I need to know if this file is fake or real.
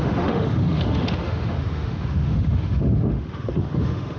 fake